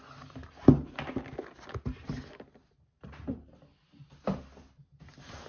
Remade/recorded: recorded